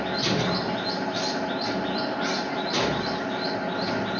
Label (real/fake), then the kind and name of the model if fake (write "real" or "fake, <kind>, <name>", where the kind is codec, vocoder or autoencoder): real